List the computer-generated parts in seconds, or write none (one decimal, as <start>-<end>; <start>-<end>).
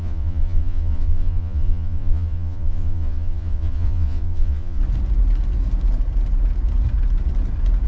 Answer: 0.0-4.8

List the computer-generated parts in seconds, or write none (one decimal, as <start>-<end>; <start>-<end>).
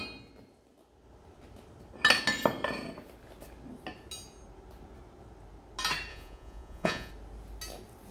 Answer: 6.1-7.1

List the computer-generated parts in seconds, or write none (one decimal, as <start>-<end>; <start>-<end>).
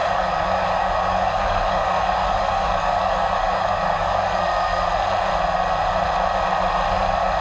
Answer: 0.0-4.4